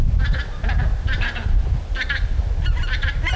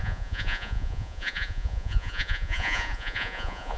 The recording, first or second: first